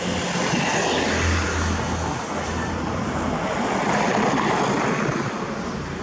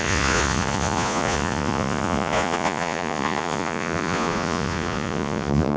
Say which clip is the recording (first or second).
first